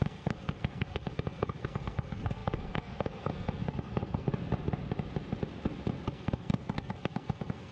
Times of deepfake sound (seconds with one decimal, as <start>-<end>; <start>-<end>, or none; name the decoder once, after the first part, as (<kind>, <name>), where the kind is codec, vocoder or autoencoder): 0.0-4.3 (codec, SNAC); 6.1-7.7